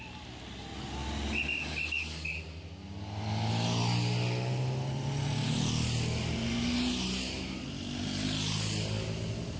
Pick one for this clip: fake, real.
real